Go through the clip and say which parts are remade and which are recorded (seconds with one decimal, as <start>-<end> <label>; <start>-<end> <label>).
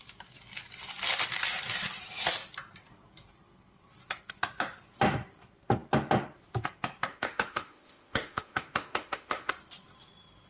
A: 0.0-7.1 recorded; 7.1-9.5 remade; 9.5-10.5 recorded